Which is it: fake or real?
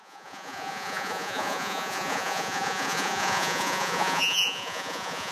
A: fake